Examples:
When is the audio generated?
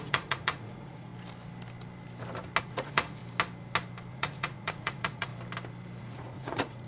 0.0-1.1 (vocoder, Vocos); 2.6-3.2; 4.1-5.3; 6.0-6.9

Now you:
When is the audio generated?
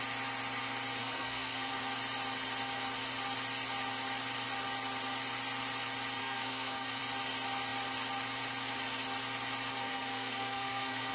1.0-1.7 (codec, SNAC); 6.2-7.0; 9.8-11.1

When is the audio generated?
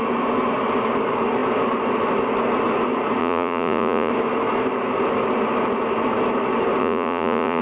3.2-4.1 (vocoder, Vocos); 6.8-7.6